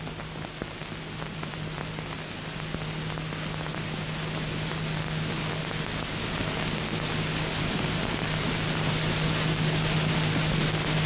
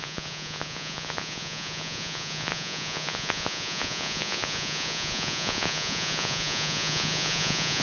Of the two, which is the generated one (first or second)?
second